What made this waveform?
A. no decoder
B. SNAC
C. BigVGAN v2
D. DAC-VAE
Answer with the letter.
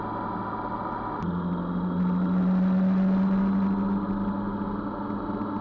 A